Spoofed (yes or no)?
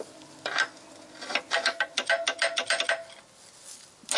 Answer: no